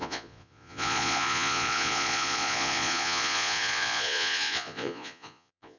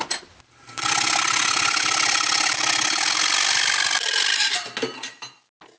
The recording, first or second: second